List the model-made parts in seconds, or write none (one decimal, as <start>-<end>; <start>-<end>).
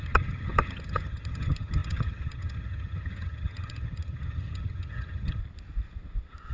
0.0-5.4